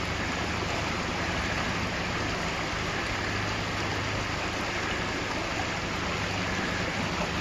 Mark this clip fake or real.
real